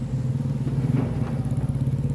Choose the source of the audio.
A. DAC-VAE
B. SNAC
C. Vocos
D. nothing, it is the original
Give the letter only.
D